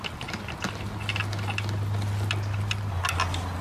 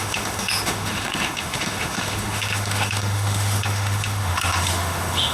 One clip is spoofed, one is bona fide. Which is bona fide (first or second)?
first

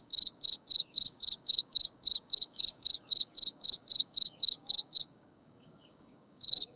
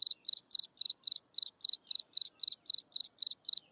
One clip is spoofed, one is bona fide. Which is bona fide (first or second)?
second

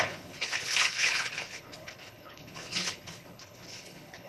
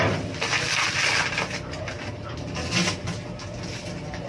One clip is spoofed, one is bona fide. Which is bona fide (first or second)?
second